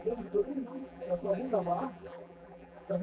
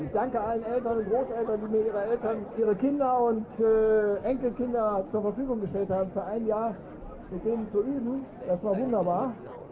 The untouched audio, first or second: second